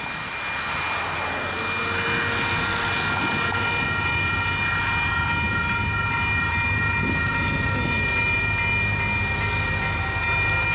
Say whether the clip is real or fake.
real